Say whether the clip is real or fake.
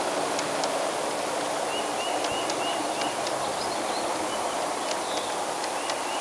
real